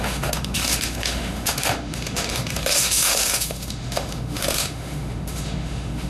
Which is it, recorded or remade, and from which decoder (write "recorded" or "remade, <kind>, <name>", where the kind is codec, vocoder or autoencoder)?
remade, autoencoder, DAC-VAE